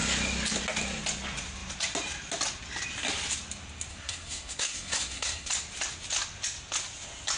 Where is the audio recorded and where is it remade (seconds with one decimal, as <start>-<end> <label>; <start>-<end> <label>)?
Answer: 0.0-3.9 recorded; 3.9-5.5 remade; 5.5-7.4 recorded